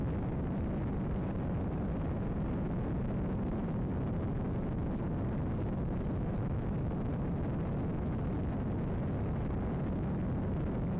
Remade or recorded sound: recorded